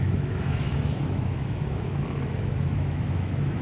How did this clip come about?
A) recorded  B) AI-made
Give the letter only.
B